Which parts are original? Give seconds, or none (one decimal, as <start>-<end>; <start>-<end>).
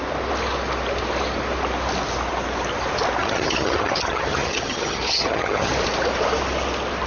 0.0-3.2; 5.7-7.1